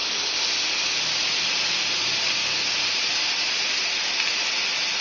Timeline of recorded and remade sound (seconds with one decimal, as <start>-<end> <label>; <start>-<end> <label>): 0.0-5.0 recorded